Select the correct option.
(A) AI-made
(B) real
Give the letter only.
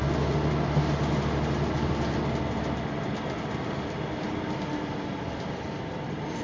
B